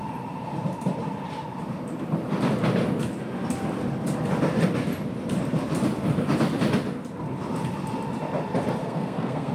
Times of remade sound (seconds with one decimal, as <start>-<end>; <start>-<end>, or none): 8.8-9.5